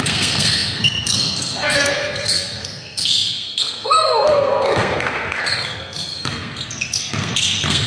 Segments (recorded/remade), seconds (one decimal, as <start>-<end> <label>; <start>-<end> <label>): 0.0-7.9 remade